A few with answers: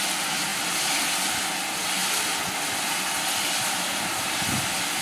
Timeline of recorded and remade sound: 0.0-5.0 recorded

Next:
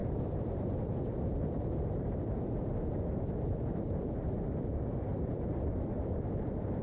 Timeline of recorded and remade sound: 0.0-4.1 remade; 4.1-5.1 recorded; 5.1-6.8 remade

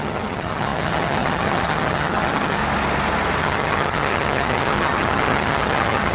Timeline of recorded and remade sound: 0.0-2.6 remade; 2.6-3.4 recorded; 3.4-6.1 remade

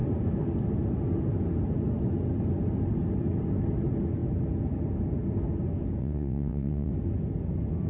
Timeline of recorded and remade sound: 0.0-6.0 recorded; 6.0-6.9 remade; 6.9-7.9 recorded

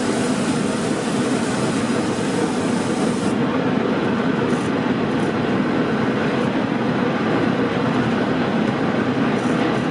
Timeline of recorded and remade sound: 0.0-6.2 recorded; 6.2-9.1 remade; 9.1-9.9 recorded

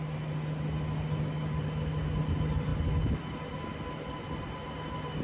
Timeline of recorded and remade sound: 0.0-5.2 recorded